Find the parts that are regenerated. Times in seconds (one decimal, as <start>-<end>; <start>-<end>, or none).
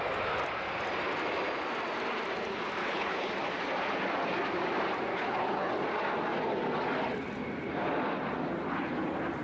2.8-3.3; 5.1-5.7